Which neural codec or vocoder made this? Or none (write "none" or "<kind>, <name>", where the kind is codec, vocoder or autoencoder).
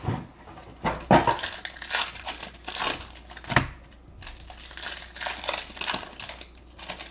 none